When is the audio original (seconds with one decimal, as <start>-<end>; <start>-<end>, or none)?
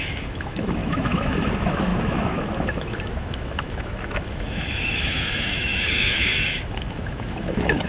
none